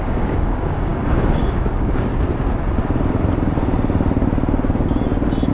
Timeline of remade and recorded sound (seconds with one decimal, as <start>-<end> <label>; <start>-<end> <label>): 0.0-2.1 remade; 2.1-5.5 recorded